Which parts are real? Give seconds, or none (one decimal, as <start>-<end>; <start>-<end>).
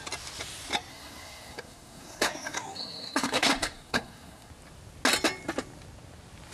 0.0-0.9; 4.5-6.5